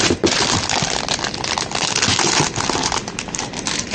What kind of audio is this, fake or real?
real